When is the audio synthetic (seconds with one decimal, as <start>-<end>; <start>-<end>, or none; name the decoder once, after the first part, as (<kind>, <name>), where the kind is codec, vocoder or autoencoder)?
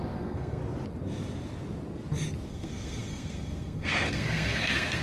0.0-0.6 (codec, SNAC); 2.5-5.0